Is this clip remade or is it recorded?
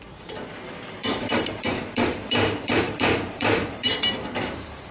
remade